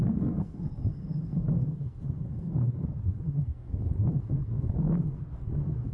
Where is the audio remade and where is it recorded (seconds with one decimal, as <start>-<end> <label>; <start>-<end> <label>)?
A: 0.0-5.9 remade